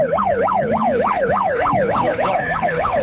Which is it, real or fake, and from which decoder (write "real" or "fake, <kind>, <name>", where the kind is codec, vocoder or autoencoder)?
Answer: fake, codec, HILCodec